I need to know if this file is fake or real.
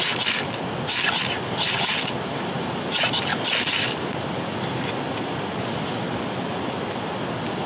real